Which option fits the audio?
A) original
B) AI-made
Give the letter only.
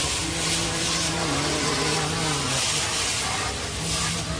A